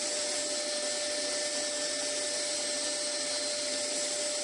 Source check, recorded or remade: recorded